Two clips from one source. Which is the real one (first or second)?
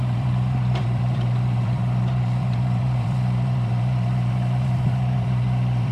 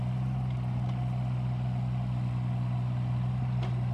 second